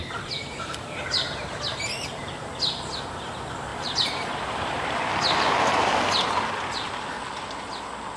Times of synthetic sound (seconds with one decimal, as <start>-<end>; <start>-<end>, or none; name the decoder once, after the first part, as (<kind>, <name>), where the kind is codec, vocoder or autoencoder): 0.0-2.5 (vocoder, BigVGAN v2); 3.7-5.0

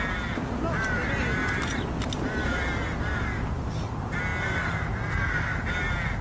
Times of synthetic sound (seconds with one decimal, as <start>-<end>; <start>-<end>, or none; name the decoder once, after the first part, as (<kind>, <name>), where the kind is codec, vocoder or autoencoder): none

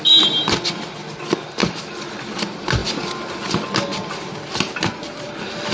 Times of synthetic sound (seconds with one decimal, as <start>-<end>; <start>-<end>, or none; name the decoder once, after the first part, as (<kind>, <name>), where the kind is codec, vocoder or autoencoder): 1.6-2.4 (vocoder, BigVGAN v2); 4.0-5.3

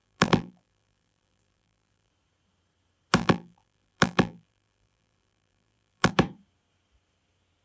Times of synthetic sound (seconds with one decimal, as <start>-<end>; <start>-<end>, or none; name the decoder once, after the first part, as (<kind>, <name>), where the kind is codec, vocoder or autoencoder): 0.0-2.1 (vocoder, BigVGAN v2); 3.2-6.1

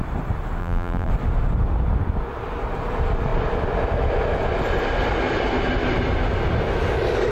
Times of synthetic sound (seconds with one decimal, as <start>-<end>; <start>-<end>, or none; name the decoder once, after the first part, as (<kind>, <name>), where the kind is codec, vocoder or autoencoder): 0.6-1.1 (vocoder, BigVGAN v2)

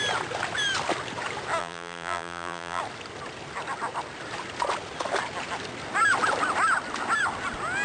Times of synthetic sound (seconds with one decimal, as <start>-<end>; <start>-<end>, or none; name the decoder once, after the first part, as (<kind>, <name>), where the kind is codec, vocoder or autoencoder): 1.6-2.8 (vocoder, BigVGAN v2)

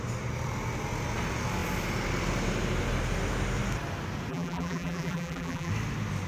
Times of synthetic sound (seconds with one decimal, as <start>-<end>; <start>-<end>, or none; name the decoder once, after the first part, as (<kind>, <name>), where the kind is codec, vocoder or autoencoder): 4.3-5.7 (vocoder, BigVGAN v2)